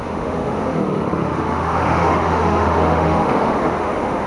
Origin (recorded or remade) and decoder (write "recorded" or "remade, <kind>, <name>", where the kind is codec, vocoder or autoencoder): remade, autoencoder, DAC-VAE